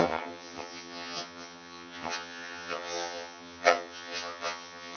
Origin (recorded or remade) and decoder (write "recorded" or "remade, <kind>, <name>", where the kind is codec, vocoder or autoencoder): remade, vocoder, HiFi-GAN